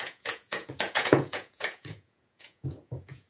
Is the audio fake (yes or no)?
yes